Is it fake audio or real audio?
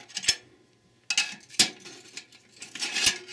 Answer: real